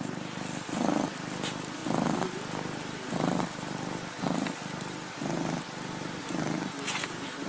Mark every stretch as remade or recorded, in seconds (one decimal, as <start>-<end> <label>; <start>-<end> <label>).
0.0-7.5 recorded